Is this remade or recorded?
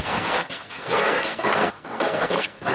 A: remade